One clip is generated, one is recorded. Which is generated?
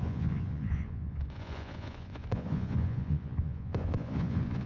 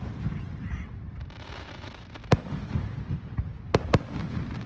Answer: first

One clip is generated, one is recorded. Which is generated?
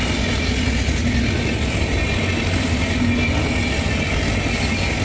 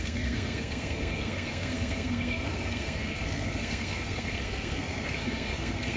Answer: second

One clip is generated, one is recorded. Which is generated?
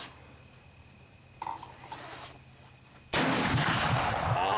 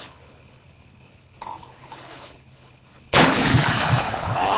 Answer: second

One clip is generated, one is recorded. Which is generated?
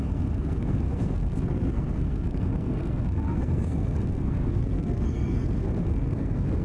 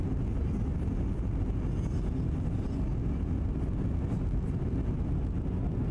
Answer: first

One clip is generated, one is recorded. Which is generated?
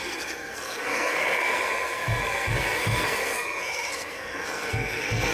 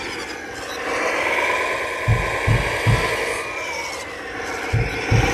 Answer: first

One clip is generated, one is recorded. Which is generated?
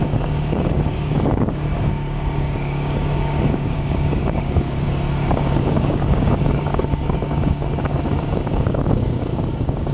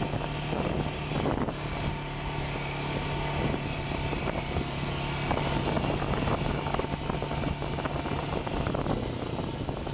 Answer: first